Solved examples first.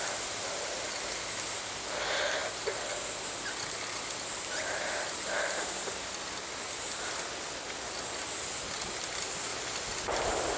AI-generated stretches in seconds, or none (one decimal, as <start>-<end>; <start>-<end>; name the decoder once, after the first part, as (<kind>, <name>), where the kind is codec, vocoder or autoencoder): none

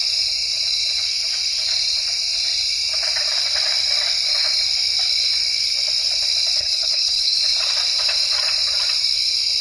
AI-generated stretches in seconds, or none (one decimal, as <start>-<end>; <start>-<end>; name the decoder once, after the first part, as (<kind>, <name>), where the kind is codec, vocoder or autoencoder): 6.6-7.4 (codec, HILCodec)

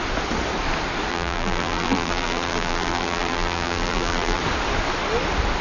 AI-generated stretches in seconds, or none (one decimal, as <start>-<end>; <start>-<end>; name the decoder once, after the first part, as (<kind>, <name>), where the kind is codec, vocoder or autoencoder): 1.1-4.4 (vocoder, BigVGAN v2)

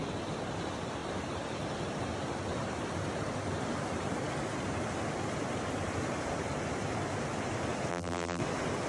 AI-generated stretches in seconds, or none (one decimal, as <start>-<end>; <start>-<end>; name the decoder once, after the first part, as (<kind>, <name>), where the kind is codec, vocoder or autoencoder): 7.9-8.4 (vocoder, BigVGAN v2)